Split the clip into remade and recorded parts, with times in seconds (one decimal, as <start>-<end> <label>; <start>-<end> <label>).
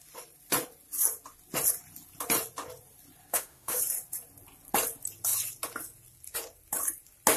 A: 0.0-3.3 recorded; 3.3-3.8 remade; 3.8-7.4 recorded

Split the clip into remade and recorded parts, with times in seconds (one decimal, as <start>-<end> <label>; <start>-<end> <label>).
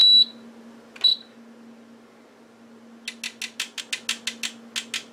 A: 0.0-5.1 recorded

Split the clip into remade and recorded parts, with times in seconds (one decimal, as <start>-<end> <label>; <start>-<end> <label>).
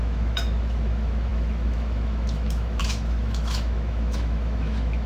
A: 0.0-5.1 remade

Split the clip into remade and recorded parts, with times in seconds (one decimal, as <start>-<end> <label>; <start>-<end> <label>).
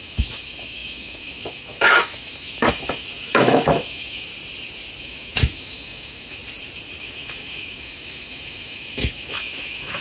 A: 0.0-4.3 remade; 4.3-5.0 recorded; 5.0-6.4 remade; 6.4-7.0 recorded; 7.0-10.0 remade